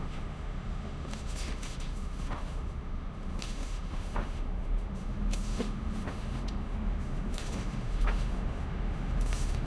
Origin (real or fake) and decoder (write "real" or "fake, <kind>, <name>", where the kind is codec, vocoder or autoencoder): fake, autoencoder, DAC-VAE